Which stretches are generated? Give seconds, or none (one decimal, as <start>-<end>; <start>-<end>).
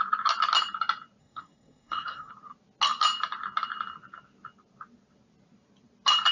1.2-2.3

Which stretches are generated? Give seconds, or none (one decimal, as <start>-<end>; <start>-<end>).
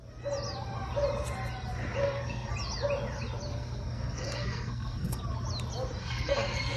2.0-2.5; 3.5-5.2; 6.0-6.8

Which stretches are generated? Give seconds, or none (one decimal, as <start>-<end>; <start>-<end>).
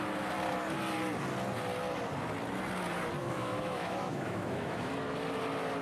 3.2-4.9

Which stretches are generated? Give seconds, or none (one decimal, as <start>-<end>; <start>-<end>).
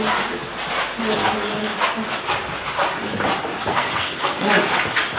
3.7-4.5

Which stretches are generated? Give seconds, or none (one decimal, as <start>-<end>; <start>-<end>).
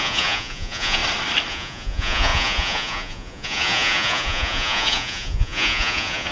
0.0-1.0; 1.5-6.3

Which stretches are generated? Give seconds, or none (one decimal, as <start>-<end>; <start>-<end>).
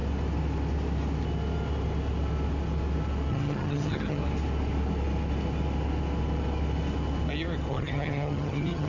3.3-4.2; 7.7-8.9